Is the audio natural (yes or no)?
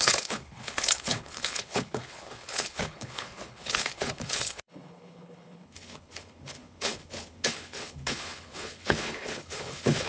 no